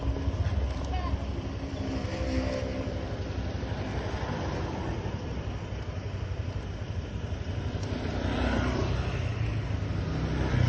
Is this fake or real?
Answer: real